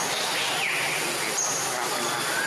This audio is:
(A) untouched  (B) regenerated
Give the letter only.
A